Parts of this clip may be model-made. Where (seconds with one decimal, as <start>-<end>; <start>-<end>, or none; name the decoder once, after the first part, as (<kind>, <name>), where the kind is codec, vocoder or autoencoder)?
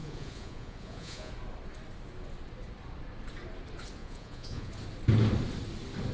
0.0-1.3 (vocoder, Vocos); 4.0-4.7